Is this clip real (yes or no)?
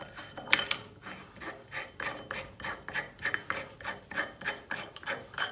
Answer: yes